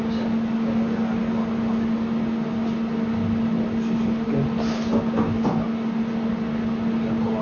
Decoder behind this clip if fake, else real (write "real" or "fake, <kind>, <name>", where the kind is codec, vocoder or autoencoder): real